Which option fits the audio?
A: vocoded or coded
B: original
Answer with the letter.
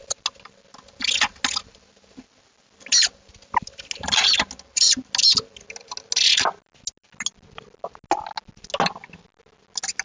B